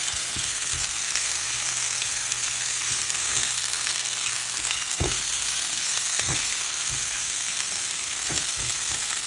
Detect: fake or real fake